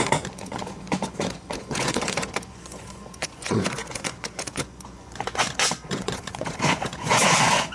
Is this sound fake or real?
fake